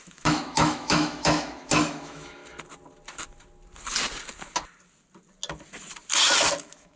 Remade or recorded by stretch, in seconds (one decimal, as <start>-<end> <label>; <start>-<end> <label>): 0.0-2.4 remade; 2.4-6.6 recorded; 6.6-7.0 remade